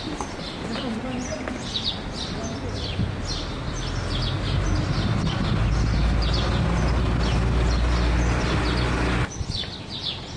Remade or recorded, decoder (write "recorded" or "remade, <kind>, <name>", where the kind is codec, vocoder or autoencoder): recorded